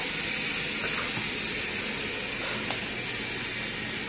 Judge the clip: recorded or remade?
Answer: recorded